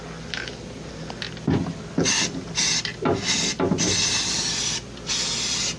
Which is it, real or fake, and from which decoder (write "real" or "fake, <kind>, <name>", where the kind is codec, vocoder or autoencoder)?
real